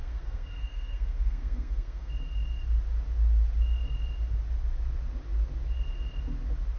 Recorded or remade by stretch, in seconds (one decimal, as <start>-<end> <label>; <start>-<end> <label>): 0.0-2.1 remade; 2.1-6.8 recorded